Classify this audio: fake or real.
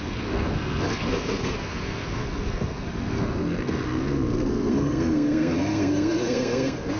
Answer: fake